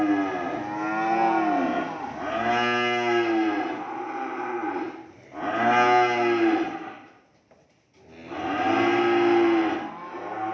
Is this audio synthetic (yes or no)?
no